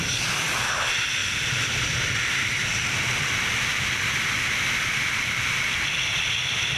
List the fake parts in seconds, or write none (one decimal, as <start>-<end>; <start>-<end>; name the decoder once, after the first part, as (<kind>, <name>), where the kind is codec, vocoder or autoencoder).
1.2-1.8 (vocoder, BigVGAN v2); 3.7-4.3